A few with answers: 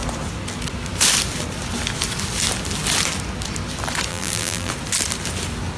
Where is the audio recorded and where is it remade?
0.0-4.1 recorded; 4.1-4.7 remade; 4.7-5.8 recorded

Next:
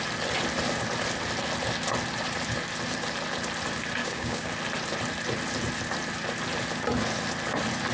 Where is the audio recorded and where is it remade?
0.0-4.0 recorded; 4.0-4.5 remade; 4.5-7.9 recorded

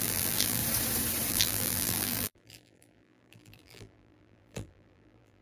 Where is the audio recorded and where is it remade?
0.0-0.6 remade; 0.6-1.3 recorded; 1.3-5.4 remade

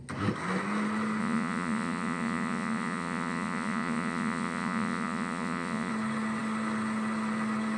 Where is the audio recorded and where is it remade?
0.0-1.2 recorded; 1.2-5.9 remade; 5.9-7.8 recorded